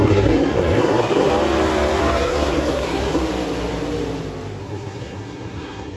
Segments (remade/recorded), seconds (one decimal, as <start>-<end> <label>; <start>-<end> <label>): 0.0-1.3 remade; 1.3-2.0 recorded; 2.0-3.2 remade; 3.2-4.6 recorded; 4.6-6.0 remade